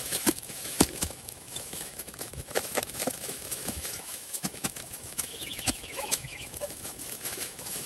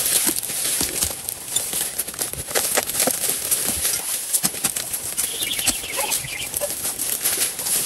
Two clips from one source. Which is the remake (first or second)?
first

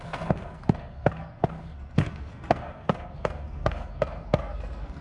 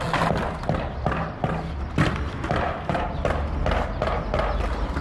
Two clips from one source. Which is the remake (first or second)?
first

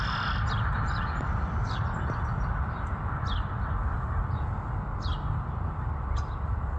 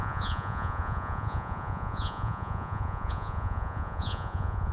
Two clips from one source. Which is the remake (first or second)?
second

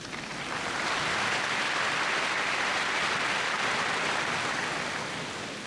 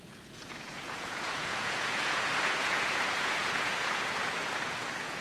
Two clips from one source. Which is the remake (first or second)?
second